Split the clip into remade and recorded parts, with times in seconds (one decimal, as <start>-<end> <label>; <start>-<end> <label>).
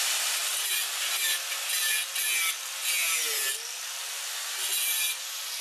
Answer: 0.0-5.6 recorded